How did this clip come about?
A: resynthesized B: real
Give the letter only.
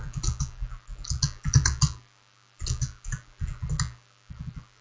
B